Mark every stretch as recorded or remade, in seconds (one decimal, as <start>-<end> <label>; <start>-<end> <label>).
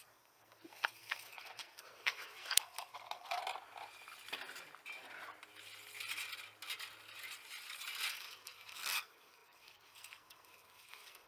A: 0.0-3.4 remade; 3.4-8.1 recorded; 8.1-11.3 remade